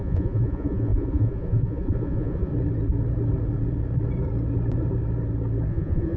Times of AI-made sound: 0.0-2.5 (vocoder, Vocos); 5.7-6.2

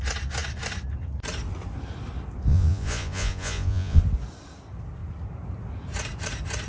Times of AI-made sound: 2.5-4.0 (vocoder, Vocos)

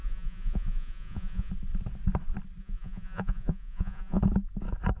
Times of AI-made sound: 0.0-1.5 (vocoder, Vocos); 2.6-4.2

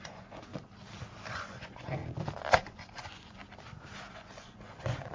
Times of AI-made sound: 0.0-0.5 (vocoder, Vocos); 1.3-2.0; 2.6-3.4; 4.1-5.1